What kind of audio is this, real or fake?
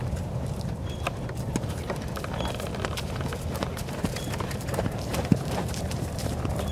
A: fake